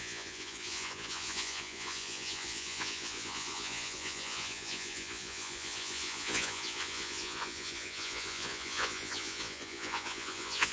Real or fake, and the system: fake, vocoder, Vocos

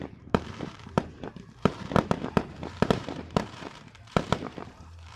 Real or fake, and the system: fake, vocoder, BigVGAN v2